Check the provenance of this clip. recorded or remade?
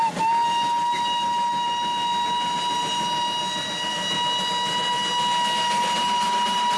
recorded